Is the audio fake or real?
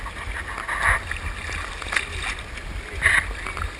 real